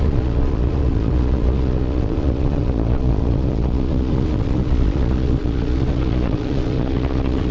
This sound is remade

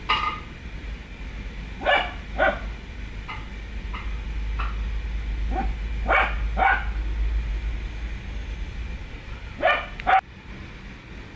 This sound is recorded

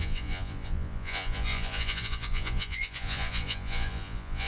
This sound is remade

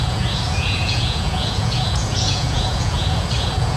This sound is remade